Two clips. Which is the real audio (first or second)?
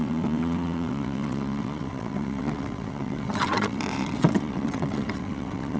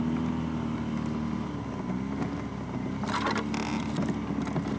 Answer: second